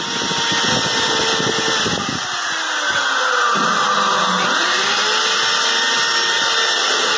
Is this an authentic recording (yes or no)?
yes